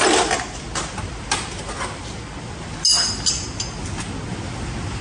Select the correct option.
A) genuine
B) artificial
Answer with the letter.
A